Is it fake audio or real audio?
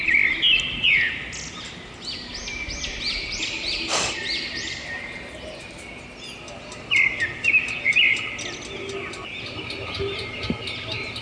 real